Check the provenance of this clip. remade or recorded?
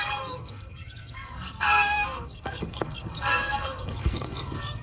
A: remade